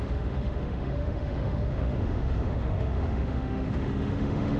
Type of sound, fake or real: fake